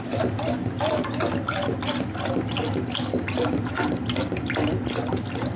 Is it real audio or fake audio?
real